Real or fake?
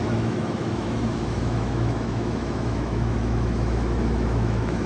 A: fake